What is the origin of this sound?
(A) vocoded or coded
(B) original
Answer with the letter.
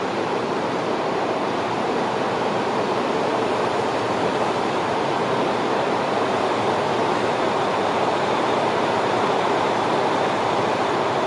A